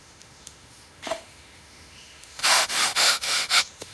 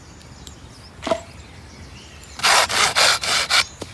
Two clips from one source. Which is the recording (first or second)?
second